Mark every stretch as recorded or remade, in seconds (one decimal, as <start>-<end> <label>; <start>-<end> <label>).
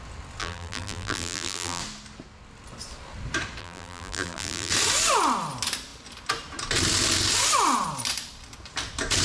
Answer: 0.0-0.4 recorded; 0.4-1.8 remade; 1.8-3.6 recorded; 3.6-4.7 remade; 4.7-9.2 recorded